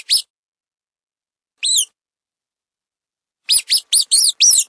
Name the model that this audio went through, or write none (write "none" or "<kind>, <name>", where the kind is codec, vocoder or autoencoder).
none